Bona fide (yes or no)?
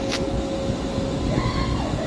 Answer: yes